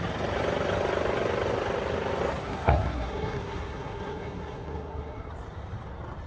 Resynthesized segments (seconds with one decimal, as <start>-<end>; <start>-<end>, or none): 2.4-5.3